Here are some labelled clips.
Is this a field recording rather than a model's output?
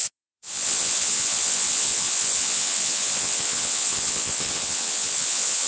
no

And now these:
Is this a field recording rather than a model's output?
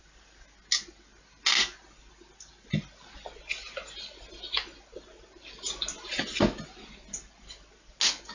yes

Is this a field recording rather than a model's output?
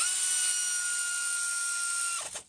yes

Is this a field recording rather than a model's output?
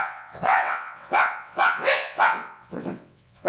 no